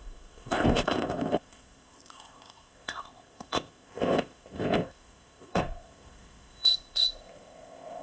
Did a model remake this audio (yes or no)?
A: yes